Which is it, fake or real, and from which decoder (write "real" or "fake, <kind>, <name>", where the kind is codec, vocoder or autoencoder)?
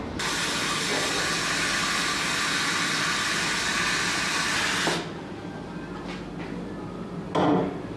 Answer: real